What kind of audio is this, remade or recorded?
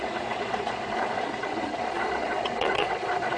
remade